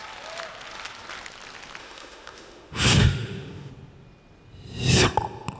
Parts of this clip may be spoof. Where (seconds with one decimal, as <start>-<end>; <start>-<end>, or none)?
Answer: 1.8-3.7